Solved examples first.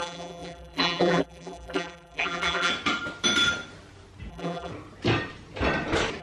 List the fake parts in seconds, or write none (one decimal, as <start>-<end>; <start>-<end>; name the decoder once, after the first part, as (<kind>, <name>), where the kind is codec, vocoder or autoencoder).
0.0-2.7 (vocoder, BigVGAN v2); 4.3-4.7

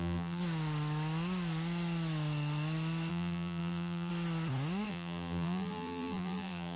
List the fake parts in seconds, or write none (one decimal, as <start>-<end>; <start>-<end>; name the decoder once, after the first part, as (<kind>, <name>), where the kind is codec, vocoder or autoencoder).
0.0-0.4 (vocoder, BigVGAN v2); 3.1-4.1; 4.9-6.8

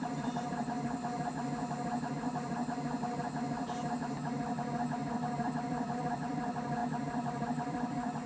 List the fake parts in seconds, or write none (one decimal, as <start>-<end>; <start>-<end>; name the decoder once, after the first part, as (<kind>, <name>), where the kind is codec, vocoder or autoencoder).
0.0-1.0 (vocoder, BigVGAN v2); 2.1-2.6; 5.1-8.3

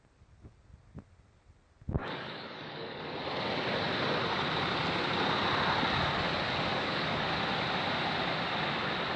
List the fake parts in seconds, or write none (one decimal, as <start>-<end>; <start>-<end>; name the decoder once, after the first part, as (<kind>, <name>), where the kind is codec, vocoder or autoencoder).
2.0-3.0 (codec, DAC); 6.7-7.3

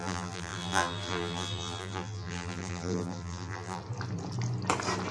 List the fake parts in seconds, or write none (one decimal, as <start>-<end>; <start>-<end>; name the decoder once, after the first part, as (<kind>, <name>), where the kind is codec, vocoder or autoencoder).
0.0-3.8 (vocoder, BigVGAN v2)

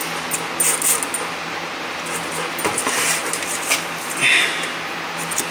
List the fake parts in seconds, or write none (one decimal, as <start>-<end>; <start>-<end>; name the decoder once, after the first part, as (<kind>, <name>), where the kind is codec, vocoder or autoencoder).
1.4-1.9 (vocoder, BigVGAN v2)

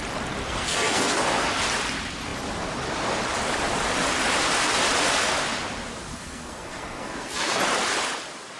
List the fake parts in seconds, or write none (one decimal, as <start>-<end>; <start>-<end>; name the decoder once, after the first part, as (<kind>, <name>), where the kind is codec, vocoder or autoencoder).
0.4-1.6 (codec, SNAC); 6.1-7.6